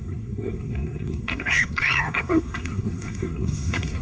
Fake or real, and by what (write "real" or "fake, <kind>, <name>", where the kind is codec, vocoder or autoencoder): fake, codec, SNAC